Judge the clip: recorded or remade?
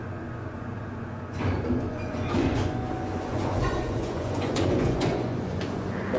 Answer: remade